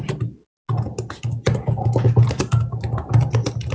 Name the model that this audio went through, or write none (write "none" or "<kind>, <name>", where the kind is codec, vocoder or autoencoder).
none